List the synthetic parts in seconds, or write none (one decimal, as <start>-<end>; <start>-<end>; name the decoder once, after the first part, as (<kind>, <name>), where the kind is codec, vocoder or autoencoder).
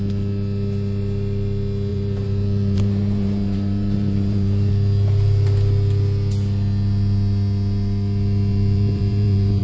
1.9-4.7 (vocoder, BigVGAN v2); 8.5-9.6